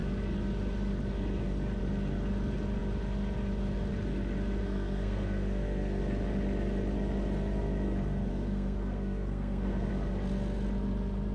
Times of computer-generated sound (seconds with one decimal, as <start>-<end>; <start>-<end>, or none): 4.6-6.0; 8.3-9.9